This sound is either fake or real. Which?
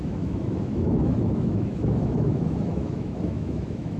fake